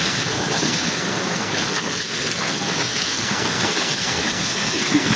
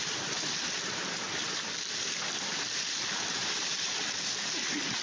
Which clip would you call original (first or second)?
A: second